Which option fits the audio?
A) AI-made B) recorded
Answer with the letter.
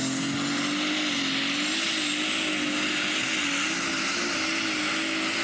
B